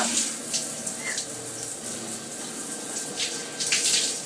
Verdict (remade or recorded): recorded